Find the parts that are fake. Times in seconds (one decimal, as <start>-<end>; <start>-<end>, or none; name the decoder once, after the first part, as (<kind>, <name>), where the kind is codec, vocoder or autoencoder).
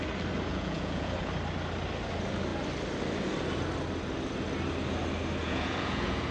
0.5-1.2 (vocoder, Vocos); 5.4-6.3